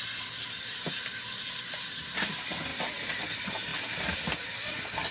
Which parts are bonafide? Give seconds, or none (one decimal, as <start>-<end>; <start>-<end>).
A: 2.7-3.3; 3.7-4.4